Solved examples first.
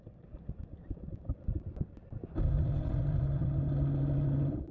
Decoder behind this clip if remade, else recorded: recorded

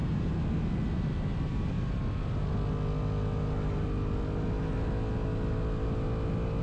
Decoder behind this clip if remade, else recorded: recorded